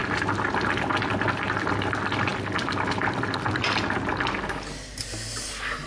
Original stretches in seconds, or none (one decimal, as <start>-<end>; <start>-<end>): 0.0-5.9